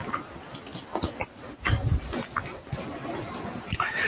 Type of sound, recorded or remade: recorded